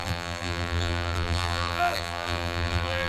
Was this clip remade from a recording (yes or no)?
yes